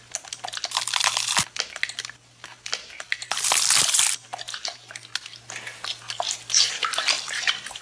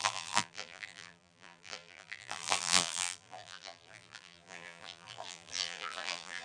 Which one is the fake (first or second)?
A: second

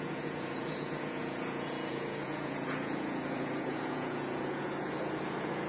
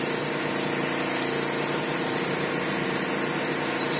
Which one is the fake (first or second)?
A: first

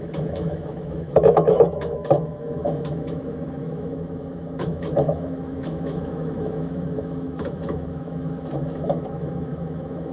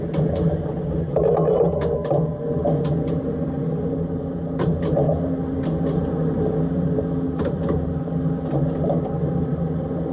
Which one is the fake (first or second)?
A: first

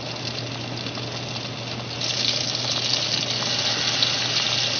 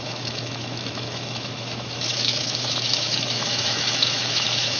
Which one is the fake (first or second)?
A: second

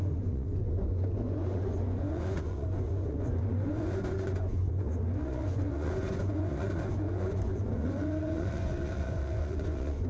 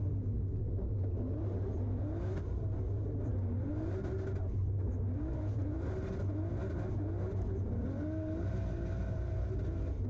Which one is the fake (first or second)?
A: first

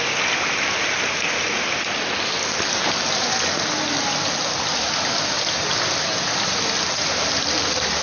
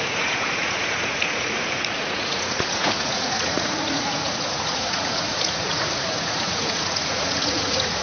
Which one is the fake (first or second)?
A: second